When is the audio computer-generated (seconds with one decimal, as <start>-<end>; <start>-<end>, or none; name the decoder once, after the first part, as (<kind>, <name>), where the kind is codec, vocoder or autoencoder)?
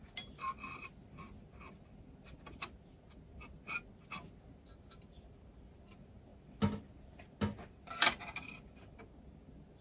none